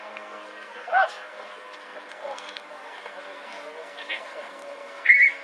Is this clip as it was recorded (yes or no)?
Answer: no